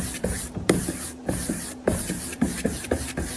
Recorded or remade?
remade